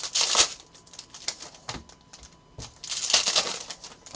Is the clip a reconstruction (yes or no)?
no